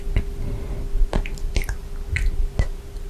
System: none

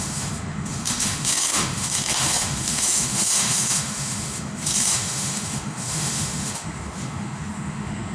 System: autoencoder, DAC-VAE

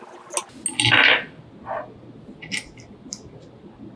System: none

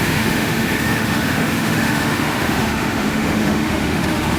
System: autoencoder, DAC-VAE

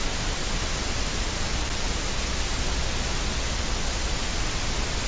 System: none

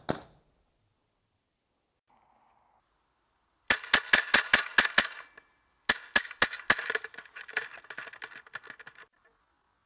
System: none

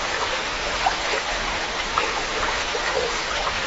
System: autoencoder, DAC-VAE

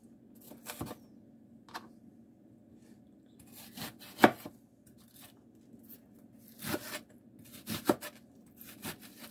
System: none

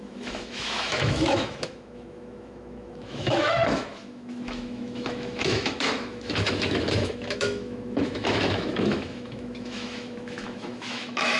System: autoencoder, DAC-VAE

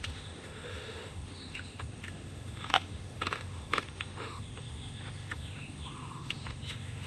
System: autoencoder, DAC-VAE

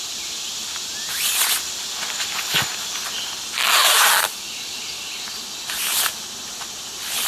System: none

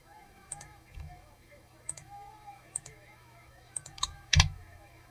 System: autoencoder, DAC-VAE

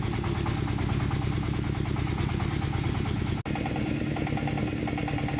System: none